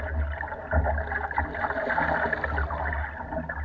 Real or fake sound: real